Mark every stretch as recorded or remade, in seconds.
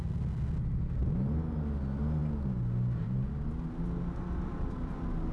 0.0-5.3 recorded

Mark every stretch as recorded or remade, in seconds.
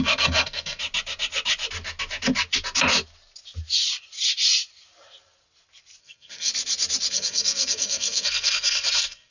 0.0-0.8 remade; 0.8-6.0 recorded; 6.0-6.5 remade; 6.5-7.1 recorded; 7.1-9.3 remade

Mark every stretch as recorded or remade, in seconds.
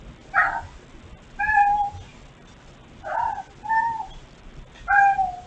0.0-5.5 recorded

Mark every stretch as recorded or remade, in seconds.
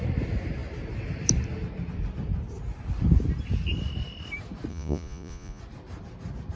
0.0-4.7 recorded; 4.7-5.6 remade; 5.6-6.6 recorded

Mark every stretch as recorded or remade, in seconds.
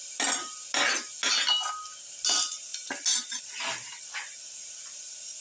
0.0-5.4 recorded